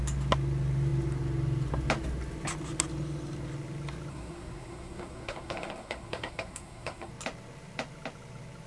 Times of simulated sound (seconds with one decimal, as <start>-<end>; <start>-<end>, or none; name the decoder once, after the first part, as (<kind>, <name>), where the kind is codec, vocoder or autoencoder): 4.1-7.1 (codec, SNAC)